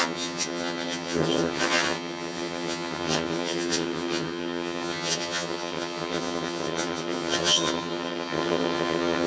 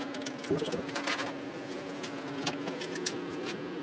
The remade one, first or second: first